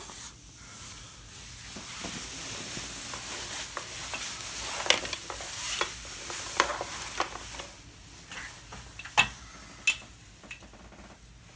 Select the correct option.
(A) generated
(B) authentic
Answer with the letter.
B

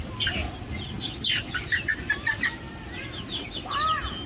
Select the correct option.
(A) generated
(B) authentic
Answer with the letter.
B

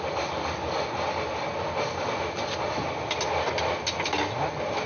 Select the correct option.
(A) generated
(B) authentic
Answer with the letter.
B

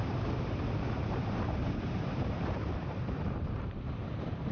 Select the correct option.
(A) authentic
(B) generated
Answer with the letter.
B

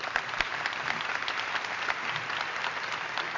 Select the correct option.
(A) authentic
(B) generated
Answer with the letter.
A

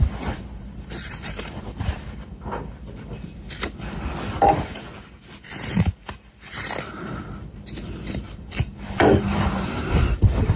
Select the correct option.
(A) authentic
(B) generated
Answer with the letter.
B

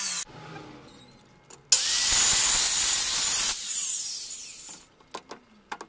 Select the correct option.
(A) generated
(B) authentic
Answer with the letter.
B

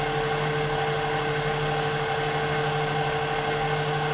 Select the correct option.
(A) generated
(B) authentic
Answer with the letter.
B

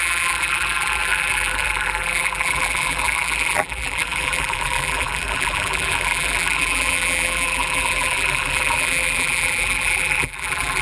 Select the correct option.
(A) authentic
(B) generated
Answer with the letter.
B